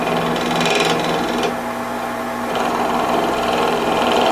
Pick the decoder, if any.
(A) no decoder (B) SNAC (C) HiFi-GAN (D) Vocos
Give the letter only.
A